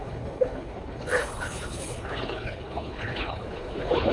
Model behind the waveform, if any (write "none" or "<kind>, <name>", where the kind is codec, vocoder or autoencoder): codec, HILCodec